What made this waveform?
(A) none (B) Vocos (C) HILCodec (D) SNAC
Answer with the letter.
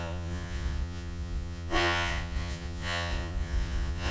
B